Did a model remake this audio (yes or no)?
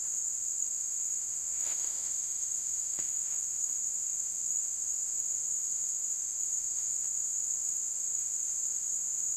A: yes